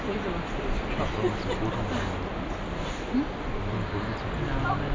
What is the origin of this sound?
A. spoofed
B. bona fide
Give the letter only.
B